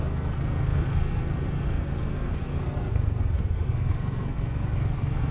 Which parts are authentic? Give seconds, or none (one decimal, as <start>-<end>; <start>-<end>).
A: none